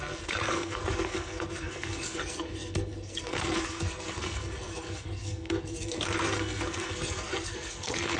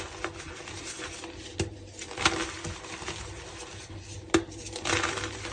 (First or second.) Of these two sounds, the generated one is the first